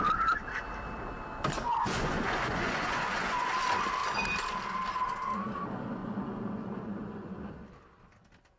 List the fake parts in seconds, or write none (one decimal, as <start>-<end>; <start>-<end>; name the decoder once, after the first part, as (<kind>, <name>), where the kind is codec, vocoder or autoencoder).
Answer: 1.7-3.5 (vocoder, Vocos); 6.0-7.3